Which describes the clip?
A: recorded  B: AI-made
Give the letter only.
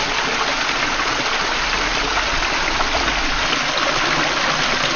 A